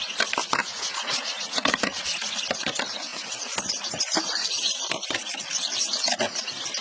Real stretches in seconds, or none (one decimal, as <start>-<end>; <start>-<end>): 0.0-0.6; 2.3-6.8